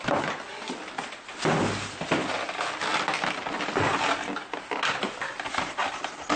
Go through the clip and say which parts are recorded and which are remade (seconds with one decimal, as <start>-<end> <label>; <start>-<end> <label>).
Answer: 0.0-6.4 recorded